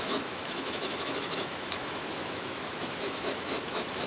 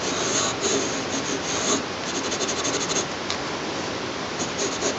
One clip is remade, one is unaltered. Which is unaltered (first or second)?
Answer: second